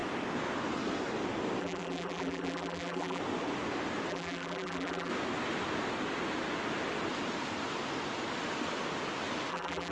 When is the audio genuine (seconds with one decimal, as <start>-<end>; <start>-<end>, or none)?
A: 0.0-1.6; 3.2-4.1; 5.1-9.5